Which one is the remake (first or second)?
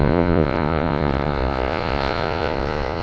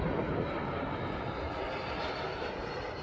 first